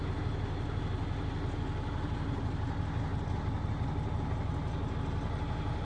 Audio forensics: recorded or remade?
recorded